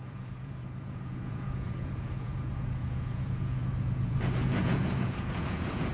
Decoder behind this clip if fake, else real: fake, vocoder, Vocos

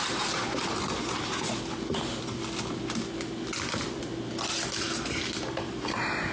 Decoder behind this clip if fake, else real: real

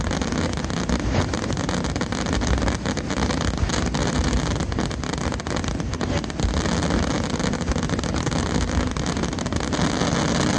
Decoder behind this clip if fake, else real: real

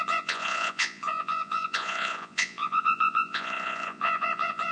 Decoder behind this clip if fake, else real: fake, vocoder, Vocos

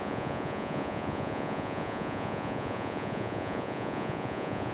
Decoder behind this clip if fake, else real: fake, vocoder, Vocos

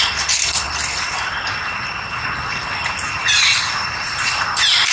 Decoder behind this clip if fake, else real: real